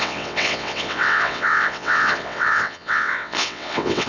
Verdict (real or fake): fake